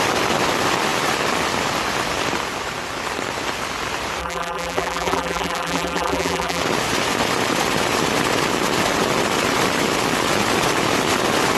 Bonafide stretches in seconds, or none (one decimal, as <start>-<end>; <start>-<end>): 0.0-4.2; 6.6-11.6